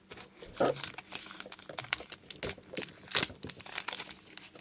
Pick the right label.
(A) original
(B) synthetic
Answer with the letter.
A